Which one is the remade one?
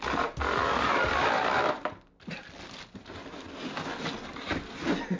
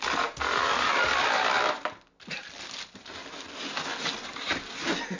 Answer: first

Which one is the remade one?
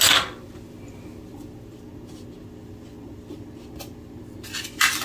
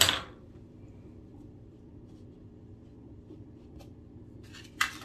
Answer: second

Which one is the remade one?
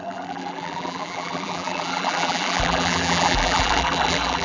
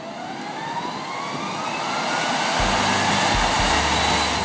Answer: first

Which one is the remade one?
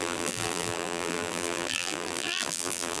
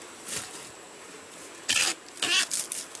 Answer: first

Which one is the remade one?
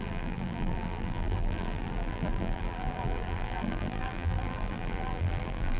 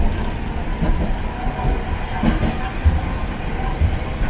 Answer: first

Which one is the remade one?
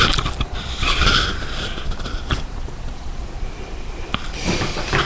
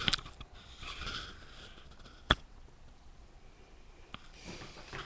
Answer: first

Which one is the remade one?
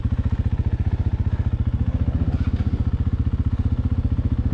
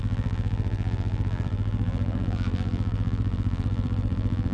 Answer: second